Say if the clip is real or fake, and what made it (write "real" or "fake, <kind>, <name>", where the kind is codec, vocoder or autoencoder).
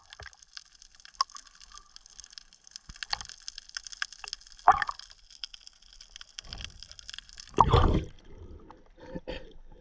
real